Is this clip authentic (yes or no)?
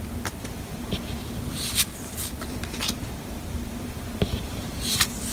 no